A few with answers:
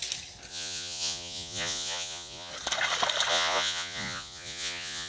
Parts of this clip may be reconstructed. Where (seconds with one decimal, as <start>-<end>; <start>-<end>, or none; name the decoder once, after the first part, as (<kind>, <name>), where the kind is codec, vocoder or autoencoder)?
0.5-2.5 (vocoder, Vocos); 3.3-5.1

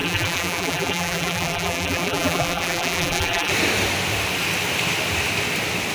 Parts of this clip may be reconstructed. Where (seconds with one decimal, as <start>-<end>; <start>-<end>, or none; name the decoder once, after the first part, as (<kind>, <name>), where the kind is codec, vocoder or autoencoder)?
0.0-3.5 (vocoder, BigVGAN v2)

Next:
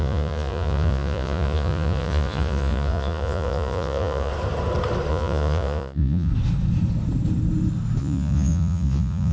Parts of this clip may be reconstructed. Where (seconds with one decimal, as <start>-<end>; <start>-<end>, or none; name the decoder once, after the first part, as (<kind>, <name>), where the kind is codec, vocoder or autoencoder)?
0.0-4.3 (vocoder, Vocos); 5.1-6.3; 8.0-9.3

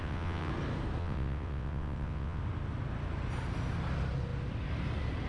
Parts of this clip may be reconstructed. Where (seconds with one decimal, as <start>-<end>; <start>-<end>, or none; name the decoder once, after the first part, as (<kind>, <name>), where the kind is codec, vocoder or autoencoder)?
0.0-0.5 (vocoder, WaveNeXt); 1.0-2.4

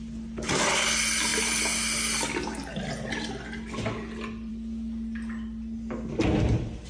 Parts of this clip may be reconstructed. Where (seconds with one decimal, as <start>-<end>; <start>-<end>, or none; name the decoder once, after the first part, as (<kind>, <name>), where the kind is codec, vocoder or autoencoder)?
none